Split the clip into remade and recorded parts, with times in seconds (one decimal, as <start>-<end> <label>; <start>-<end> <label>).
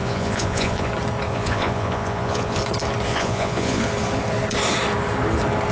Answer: 0.0-0.9 remade; 0.9-1.3 recorded; 1.3-2.6 remade; 2.6-3.1 recorded; 3.1-3.8 remade; 3.8-5.7 recorded